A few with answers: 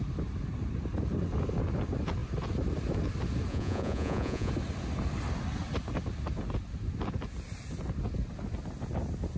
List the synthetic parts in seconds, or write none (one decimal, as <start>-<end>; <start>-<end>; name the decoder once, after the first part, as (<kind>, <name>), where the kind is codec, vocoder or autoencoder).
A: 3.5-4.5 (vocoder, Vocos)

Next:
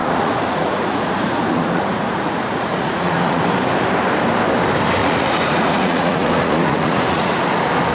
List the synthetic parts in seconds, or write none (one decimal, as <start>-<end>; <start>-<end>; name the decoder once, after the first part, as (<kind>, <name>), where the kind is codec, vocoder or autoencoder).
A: 0.0-3.4 (vocoder, Vocos); 5.0-7.3

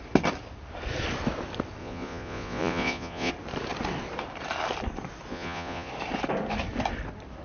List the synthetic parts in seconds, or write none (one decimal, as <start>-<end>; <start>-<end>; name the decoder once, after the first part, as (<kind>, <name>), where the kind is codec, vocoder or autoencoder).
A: 1.8-3.3 (vocoder, Vocos); 5.3-5.9

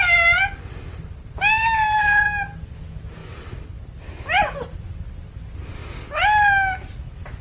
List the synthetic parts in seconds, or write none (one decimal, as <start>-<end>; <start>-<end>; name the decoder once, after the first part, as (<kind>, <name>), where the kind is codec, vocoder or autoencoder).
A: none

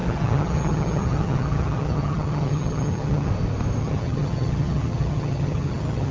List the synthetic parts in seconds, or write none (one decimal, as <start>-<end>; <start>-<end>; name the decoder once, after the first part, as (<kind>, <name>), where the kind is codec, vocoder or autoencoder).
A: 0.0-3.3 (vocoder, HiFi-GAN); 3.8-6.1

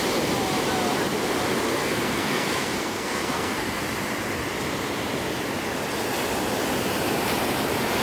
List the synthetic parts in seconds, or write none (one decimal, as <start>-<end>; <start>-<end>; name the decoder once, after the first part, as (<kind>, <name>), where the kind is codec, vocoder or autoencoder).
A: 1.8-3.8 (codec, SNAC)

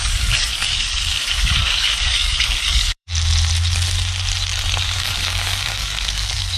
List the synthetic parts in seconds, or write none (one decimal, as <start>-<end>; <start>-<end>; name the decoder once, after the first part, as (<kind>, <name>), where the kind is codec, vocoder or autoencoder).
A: 0.0-3.1 (codec, DAC); 4.8-6.6

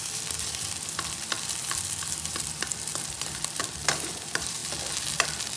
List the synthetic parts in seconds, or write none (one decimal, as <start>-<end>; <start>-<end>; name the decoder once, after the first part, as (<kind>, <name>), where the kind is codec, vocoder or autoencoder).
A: 0.0-4.6 (vocoder, BigVGAN v2)